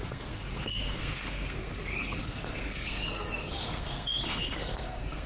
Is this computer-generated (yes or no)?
yes